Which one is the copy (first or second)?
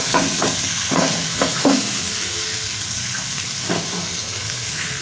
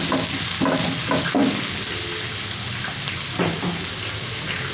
first